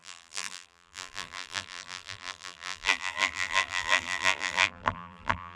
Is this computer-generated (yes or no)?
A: yes